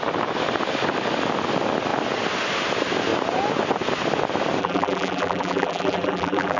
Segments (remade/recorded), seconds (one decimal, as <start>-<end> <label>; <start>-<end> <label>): 0.0-4.6 recorded; 4.6-6.6 remade